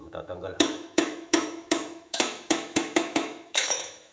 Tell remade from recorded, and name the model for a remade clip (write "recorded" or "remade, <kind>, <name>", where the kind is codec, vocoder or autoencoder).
remade, autoencoder, DAC-VAE